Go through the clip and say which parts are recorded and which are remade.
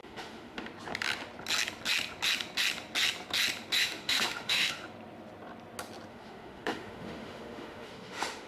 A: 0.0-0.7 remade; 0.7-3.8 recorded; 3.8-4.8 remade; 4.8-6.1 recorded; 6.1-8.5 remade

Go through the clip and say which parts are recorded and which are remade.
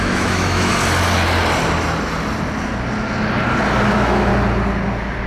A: 0.0-0.7 remade; 0.7-3.9 recorded; 3.9-4.3 remade; 4.3-5.3 recorded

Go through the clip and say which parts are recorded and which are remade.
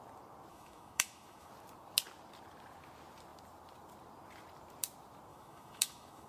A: 0.0-0.5 recorded; 0.5-1.5 remade; 1.5-5.3 recorded; 5.3-6.3 remade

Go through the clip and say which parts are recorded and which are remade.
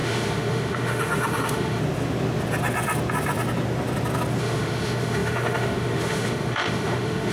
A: 0.0-1.8 remade; 1.8-4.4 recorded; 4.4-7.3 remade